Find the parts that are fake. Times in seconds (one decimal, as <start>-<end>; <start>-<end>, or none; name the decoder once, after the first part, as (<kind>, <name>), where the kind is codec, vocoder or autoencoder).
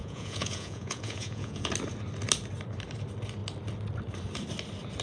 0.0-1.7 (vocoder, Vocos)